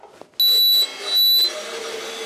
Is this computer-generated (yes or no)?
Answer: no